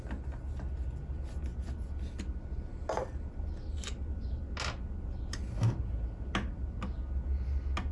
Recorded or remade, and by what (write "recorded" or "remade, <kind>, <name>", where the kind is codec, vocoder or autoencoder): recorded